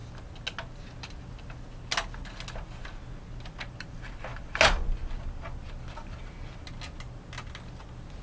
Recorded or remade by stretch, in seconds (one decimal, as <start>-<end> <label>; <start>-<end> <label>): 0.0-8.2 recorded

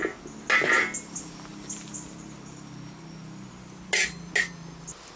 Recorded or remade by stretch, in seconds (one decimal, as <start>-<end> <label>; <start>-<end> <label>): 0.0-5.2 recorded

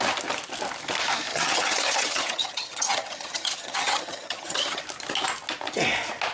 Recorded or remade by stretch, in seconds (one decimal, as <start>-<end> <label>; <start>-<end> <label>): 0.0-1.3 recorded; 1.3-4.8 remade; 4.8-6.3 recorded

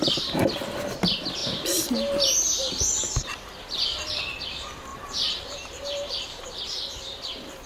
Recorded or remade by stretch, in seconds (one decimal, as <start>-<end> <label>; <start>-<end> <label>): 0.0-1.4 recorded; 1.4-4.2 remade; 4.2-4.9 recorded; 4.9-6.6 remade; 6.6-7.7 recorded

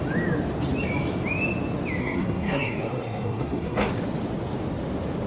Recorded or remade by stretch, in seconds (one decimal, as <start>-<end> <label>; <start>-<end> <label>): 0.0-2.0 recorded; 2.0-3.9 remade; 3.9-5.3 recorded

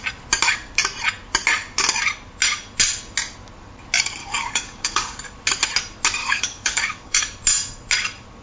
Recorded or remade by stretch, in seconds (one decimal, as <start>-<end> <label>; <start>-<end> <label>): 0.0-4.2 recorded; 4.2-5.2 remade; 5.2-6.2 recorded; 6.2-7.2 remade; 7.2-8.4 recorded